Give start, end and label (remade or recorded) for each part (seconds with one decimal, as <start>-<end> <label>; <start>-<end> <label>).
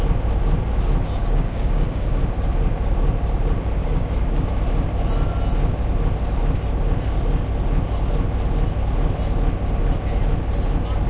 0.0-1.2 recorded; 1.2-2.1 remade; 2.1-3.8 recorded; 3.8-4.5 remade; 4.5-11.1 recorded